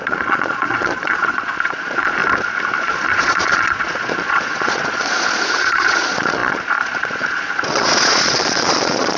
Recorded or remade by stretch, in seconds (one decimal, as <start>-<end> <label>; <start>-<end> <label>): 0.0-2.2 remade; 2.2-2.8 recorded; 2.8-9.2 remade